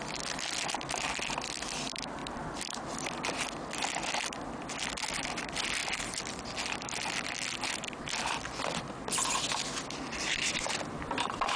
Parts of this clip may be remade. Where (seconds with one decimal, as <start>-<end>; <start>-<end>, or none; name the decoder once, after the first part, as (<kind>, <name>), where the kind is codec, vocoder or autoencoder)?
none